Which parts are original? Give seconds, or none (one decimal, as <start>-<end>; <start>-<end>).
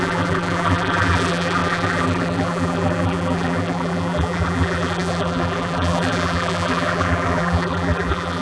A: none